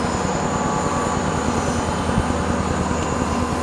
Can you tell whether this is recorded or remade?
recorded